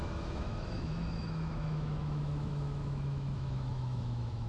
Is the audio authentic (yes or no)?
no